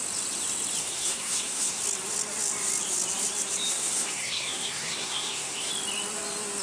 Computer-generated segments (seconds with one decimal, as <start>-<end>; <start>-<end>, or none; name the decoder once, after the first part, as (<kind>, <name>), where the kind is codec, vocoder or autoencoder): 0.8-1.8 (codec, SNAC); 3.7-5.7